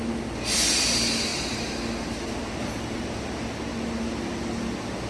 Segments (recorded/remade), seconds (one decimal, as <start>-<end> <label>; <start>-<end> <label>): 0.0-5.1 recorded